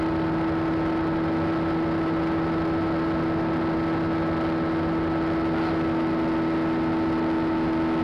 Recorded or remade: recorded